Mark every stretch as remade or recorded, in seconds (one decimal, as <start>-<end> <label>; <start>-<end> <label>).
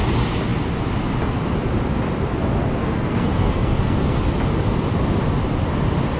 0.0-2.8 recorded; 2.8-4.2 remade; 4.2-6.2 recorded